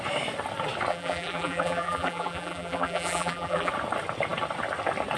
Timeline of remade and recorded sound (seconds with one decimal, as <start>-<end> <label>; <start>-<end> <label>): 0.0-0.9 recorded; 0.9-3.7 remade; 3.7-5.2 recorded